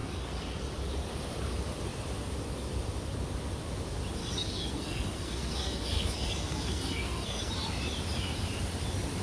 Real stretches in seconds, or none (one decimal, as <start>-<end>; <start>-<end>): 0.7-4.2; 7.5-9.2